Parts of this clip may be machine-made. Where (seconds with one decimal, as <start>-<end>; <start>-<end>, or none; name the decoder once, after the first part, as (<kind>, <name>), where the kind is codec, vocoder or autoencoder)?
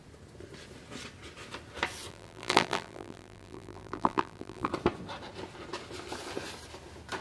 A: 2.1-4.7 (vocoder, BigVGAN v2)